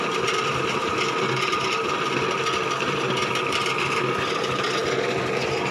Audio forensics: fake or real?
real